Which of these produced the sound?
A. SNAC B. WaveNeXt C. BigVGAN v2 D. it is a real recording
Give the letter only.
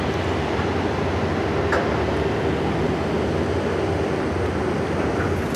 D